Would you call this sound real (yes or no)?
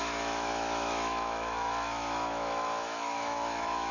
no